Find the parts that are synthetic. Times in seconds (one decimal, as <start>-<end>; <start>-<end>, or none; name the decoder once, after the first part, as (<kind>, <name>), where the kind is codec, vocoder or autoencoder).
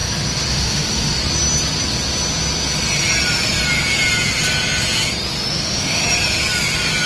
0.5-1.2 (autoencoder, DAC-VAE); 5.5-6.0